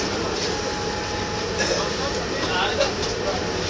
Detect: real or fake real